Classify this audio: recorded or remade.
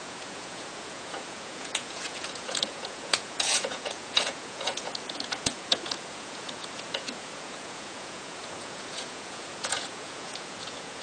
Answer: remade